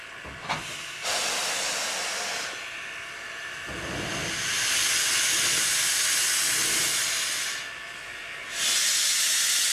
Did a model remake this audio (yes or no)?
no